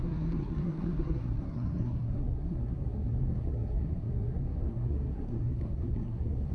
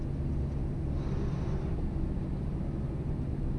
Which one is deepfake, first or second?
first